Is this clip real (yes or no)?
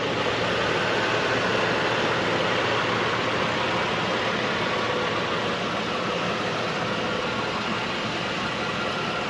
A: yes